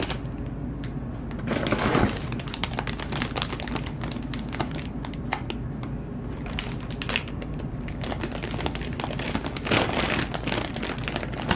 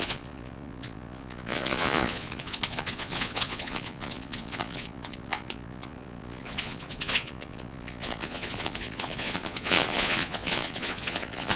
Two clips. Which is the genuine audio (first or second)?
first